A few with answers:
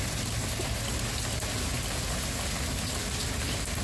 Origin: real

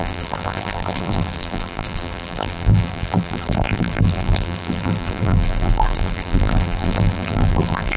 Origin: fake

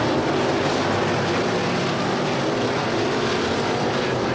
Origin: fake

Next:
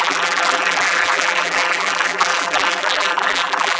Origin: fake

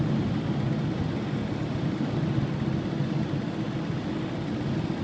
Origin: real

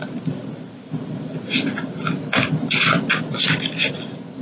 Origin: real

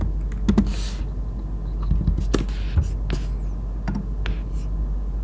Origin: real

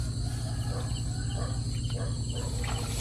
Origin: real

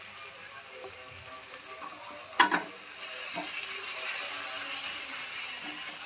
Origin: real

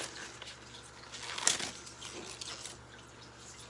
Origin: real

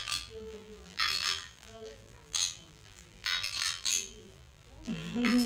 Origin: fake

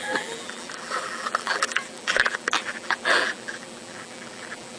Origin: fake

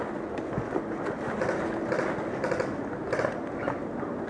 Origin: real